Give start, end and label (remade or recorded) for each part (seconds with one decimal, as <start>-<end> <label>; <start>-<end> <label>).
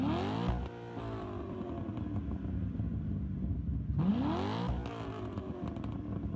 0.0-6.4 recorded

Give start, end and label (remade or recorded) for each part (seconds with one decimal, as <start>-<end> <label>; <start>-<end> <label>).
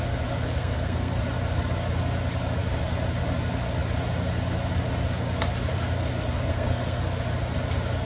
0.0-0.6 recorded; 0.6-1.2 remade; 1.2-6.5 recorded; 6.5-7.0 remade; 7.0-8.1 recorded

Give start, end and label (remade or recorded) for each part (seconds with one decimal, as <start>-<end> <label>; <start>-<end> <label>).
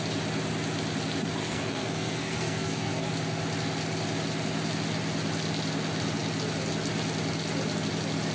0.0-1.4 recorded; 1.4-3.1 remade; 3.1-8.3 recorded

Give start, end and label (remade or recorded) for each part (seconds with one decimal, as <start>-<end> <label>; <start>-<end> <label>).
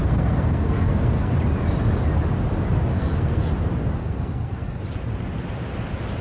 0.0-1.3 remade; 1.3-2.9 recorded; 2.9-3.5 remade; 3.5-4.0 recorded; 4.0-4.8 remade; 4.8-6.2 recorded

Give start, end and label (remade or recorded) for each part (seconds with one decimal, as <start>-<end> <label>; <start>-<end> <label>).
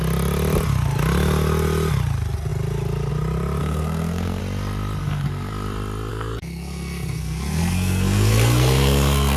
0.0-3.6 recorded; 3.6-4.4 remade; 4.4-5.0 recorded; 5.0-5.5 remade; 5.5-6.1 recorded; 6.1-9.4 remade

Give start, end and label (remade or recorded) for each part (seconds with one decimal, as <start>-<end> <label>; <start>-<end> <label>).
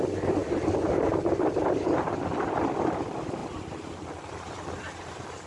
0.0-5.5 recorded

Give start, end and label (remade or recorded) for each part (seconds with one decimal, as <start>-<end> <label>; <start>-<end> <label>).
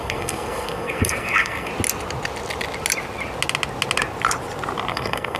0.0-1.7 remade; 1.7-4.9 recorded; 4.9-5.4 remade